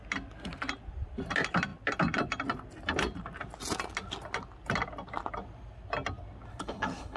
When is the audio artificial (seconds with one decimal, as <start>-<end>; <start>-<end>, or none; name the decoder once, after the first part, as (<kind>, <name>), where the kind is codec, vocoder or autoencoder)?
6.5-7.2 (codec, HILCodec)